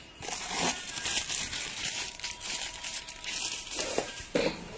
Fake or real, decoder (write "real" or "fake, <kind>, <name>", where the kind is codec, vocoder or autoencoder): fake, vocoder, BigVGAN v2